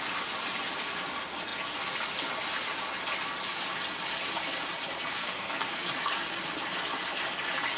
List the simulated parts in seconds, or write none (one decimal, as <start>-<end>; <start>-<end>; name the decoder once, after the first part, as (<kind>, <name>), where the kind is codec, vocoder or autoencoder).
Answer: 5.2-5.8 (codec, SNAC)